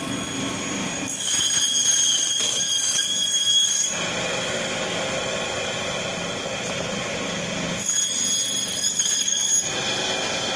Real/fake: real